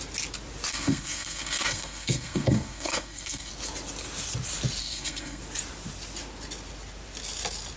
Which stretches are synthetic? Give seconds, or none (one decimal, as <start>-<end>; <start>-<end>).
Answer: 0.7-3.5; 4.8-5.4